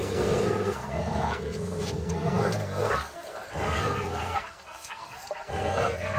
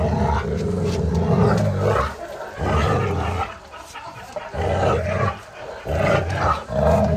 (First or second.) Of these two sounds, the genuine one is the second